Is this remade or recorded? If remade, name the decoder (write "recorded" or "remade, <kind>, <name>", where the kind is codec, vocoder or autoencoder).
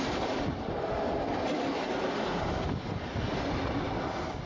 recorded